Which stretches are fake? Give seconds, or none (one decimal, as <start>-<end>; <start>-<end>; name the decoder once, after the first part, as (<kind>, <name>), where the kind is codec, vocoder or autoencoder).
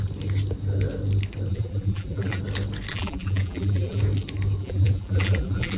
1.5-2.4 (vocoder, BigVGAN v2); 2.9-4.0; 4.6-5.8